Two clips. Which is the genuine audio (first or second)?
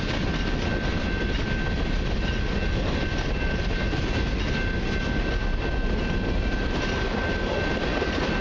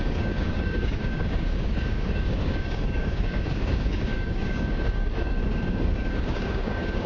first